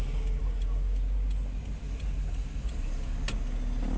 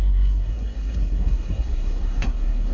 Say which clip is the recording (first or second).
first